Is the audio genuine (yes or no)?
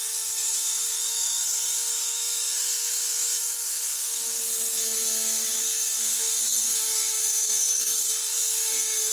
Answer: no